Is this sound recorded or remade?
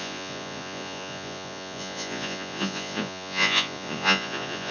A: remade